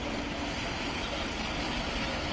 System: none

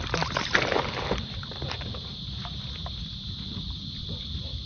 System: none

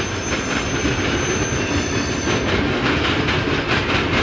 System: none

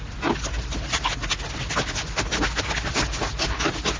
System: none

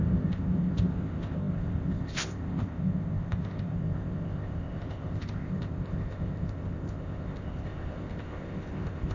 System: codec, ZipCodec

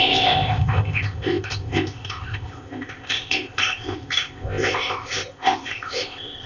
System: codec, ZipCodec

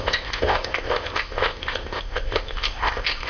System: codec, ZipCodec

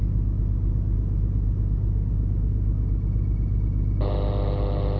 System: none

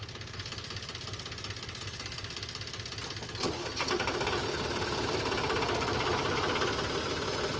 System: none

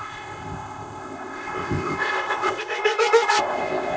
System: codec, ZipCodec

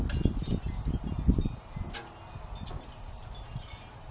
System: none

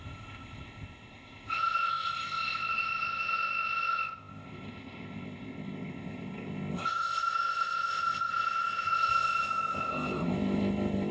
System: codec, ZipCodec